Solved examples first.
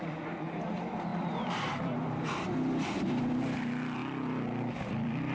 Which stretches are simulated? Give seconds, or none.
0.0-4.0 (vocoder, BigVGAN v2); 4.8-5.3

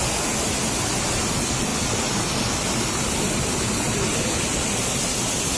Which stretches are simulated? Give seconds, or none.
none

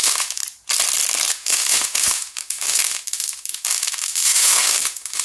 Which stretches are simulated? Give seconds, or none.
0.0-0.4 (autoencoder, DAC-VAE); 1.3-5.2

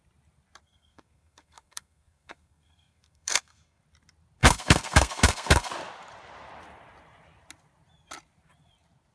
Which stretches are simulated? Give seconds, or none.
0.6-3.8 (codec, SNAC); 4.4-5.7

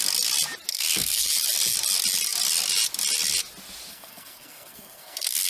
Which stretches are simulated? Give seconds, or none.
0.7-1.3 (codec, SNAC); 3.9-5.5

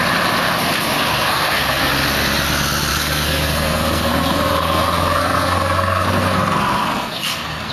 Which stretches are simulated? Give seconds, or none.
1.1-1.9 (codec, SNAC); 2.9-7.7

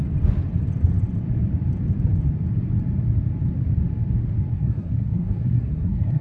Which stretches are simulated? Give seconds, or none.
4.5-6.2 (codec, SNAC)